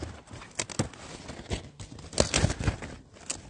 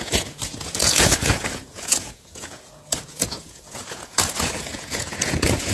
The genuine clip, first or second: first